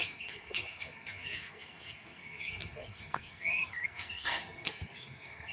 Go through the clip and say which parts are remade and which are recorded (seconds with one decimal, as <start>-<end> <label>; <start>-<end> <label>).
0.0-5.5 remade

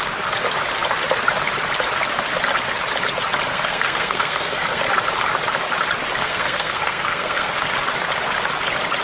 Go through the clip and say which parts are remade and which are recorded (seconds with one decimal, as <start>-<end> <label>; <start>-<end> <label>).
0.0-3.5 recorded; 3.5-4.8 remade; 4.8-6.2 recorded; 6.2-7.5 remade; 7.5-9.0 recorded

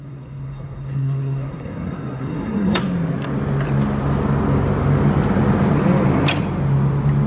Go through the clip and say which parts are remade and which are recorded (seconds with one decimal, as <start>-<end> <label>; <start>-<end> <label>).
0.0-2.8 remade; 2.8-7.3 recorded

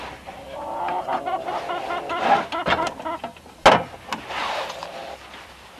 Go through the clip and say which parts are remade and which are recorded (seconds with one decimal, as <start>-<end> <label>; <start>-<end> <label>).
0.0-5.8 recorded

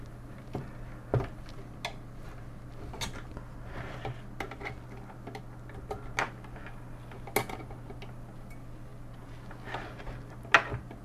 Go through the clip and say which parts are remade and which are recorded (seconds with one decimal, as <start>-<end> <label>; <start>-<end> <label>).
0.0-11.0 recorded

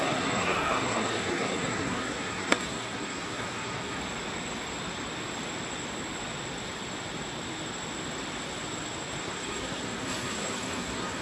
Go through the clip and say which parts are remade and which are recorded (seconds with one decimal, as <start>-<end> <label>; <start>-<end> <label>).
0.0-4.0 remade; 4.0-9.2 recorded; 9.2-11.2 remade

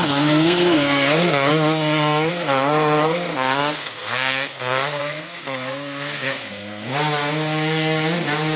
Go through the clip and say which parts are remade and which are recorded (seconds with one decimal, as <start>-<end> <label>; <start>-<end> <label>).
0.0-1.5 remade; 1.5-2.3 recorded; 2.3-6.9 remade; 6.9-8.6 recorded